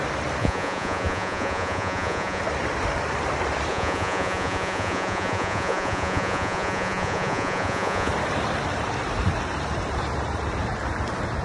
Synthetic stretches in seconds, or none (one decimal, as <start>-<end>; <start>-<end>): 0.4-2.4; 3.7-8.1